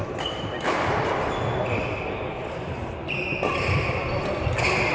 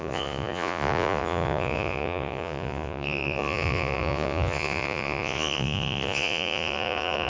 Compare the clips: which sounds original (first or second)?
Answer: first